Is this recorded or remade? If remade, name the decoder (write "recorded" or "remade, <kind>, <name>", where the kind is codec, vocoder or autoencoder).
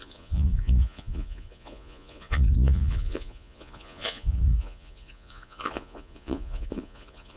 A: remade, vocoder, Vocos